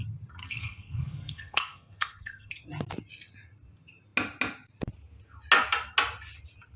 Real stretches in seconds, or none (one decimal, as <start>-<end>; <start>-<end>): 0.0-0.4; 2.5-6.8